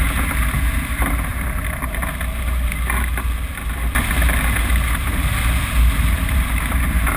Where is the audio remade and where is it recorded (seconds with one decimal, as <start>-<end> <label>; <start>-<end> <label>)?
0.0-7.2 recorded